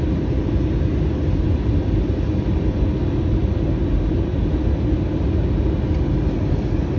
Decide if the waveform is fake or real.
real